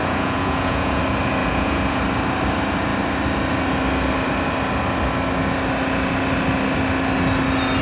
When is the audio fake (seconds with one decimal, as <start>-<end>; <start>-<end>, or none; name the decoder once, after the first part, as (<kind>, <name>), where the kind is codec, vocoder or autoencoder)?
0.0-1.0 (vocoder, Vocos); 1.4-2.0